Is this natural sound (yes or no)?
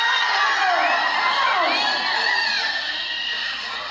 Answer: yes